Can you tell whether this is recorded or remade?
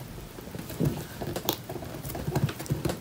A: remade